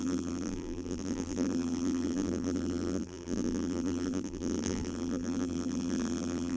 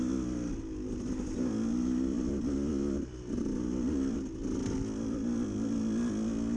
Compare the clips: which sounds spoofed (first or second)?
first